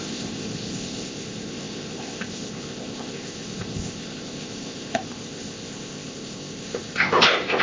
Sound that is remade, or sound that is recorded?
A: remade